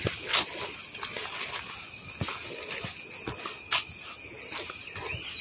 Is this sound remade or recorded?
recorded